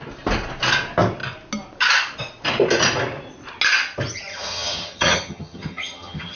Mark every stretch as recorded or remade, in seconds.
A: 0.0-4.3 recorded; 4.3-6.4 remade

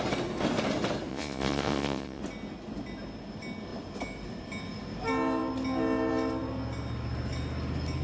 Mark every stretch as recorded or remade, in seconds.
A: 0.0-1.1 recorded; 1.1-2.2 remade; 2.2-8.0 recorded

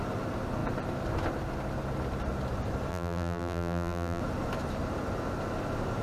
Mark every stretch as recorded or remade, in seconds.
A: 0.0-2.9 recorded; 2.9-4.2 remade; 4.2-6.0 recorded